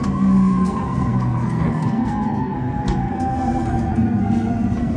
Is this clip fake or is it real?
fake